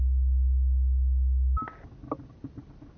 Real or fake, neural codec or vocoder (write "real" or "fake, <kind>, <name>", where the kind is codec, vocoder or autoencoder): real